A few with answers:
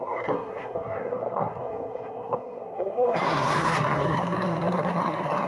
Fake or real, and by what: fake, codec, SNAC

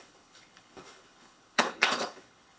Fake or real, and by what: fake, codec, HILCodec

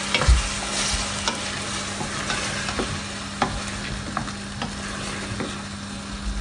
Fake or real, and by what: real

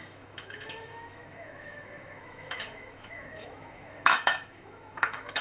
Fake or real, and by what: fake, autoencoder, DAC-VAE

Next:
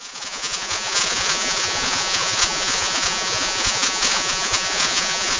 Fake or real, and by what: fake, vocoder, Vocos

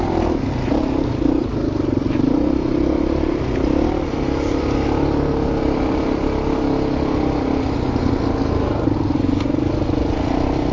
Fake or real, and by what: real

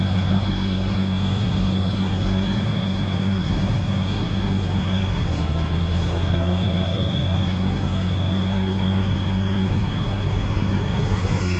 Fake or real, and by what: fake, codec, SNAC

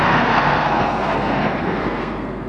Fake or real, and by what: fake, codec, SNAC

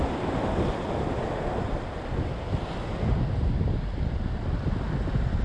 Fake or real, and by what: real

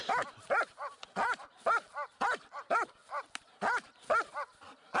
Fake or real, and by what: real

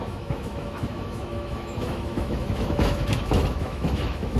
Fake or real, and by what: fake, autoencoder, DAC-VAE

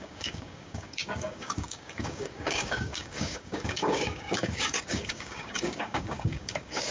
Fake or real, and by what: fake, codec, DAC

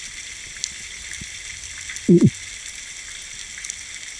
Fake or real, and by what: real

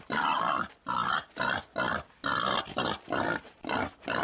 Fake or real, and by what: real